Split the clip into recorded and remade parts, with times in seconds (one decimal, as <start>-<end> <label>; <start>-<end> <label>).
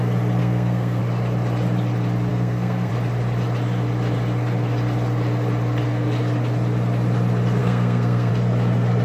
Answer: 0.0-0.4 recorded; 0.4-1.0 remade; 1.0-2.3 recorded; 2.3-2.9 remade; 2.9-7.6 recorded; 7.6-8.3 remade; 8.3-9.0 recorded